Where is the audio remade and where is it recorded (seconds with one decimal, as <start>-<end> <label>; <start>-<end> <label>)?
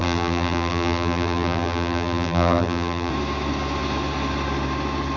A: 0.0-3.1 remade; 3.1-5.2 recorded